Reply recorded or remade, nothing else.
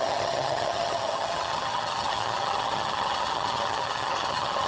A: remade